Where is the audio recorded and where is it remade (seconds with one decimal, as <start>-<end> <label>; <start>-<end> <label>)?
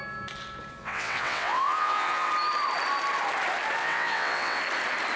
0.0-0.8 recorded; 0.8-2.3 remade; 2.3-3.8 recorded; 3.8-4.6 remade; 4.6-5.2 recorded